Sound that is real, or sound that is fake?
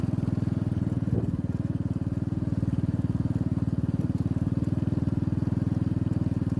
real